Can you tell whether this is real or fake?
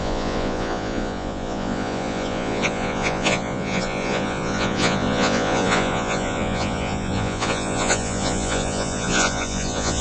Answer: fake